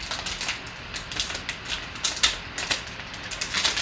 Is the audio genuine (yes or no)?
yes